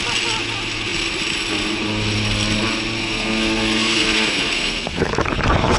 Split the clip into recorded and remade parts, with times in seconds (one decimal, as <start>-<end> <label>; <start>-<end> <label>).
0.0-3.0 recorded; 3.0-5.1 remade; 5.1-5.8 recorded

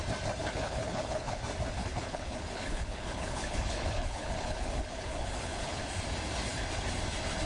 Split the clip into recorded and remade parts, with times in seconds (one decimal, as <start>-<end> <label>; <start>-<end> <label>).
0.0-0.4 recorded; 0.4-1.4 remade; 1.4-1.8 recorded; 1.8-5.8 remade; 5.8-7.5 recorded

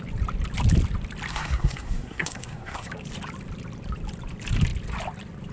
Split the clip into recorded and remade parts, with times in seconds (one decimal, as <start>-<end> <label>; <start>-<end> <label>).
0.0-1.3 recorded; 1.3-2.9 remade; 2.9-5.5 recorded

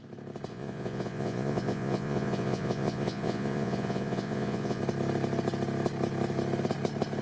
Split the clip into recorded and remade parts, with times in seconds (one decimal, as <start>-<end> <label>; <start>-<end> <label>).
0.0-0.5 recorded; 0.5-4.8 remade; 4.8-7.2 recorded

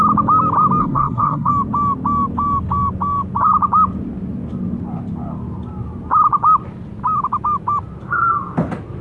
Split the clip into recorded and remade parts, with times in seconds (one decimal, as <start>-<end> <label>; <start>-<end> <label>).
0.0-0.8 recorded; 0.8-1.5 remade; 1.5-9.0 recorded